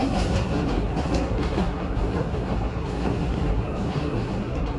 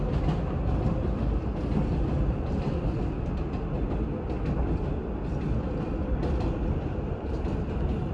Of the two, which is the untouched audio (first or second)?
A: second